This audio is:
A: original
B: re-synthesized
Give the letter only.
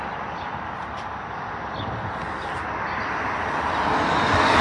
A